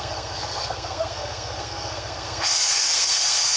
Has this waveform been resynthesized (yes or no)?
yes